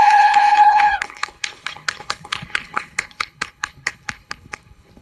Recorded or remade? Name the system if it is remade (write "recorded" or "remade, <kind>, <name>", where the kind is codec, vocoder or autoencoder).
remade, codec, HILCodec